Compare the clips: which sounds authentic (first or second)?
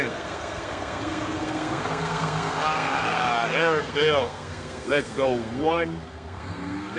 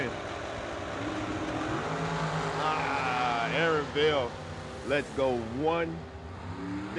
second